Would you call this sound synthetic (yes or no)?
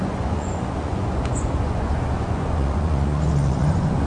yes